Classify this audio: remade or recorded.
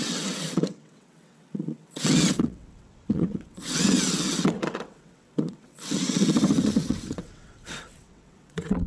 remade